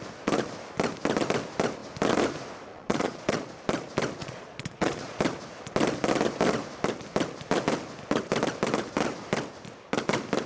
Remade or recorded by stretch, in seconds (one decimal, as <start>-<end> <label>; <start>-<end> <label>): 0.0-2.7 recorded; 2.7-3.5 remade; 3.5-4.2 recorded; 4.2-5.2 remade; 5.2-10.5 recorded